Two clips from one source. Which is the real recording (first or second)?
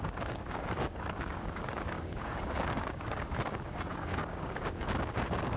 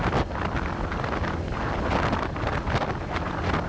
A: second